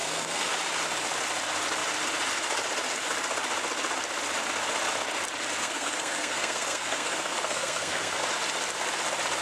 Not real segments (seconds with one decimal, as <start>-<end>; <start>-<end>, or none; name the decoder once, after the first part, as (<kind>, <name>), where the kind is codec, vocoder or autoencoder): 0.0-0.5 (codec, SNAC); 5.6-8.2